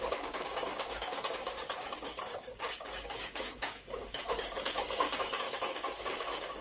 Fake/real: fake